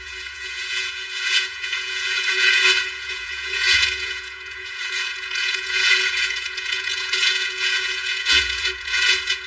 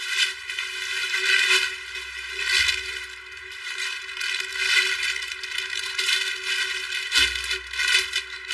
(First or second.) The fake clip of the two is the first